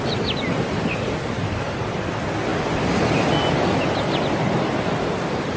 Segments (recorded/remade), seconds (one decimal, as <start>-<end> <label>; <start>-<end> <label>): 0.0-5.6 recorded